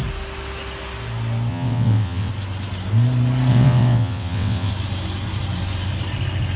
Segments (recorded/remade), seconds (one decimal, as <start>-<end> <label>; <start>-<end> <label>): 0.0-1.5 recorded; 1.5-2.3 remade; 2.3-3.5 recorded; 3.5-4.7 remade; 4.7-6.6 recorded